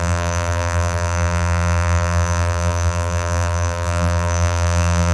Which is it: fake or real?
fake